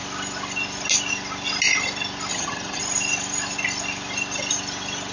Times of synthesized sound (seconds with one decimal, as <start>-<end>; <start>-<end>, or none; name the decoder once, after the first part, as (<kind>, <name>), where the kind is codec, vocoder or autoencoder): 2.3-2.8 (vocoder, HiFi-GAN)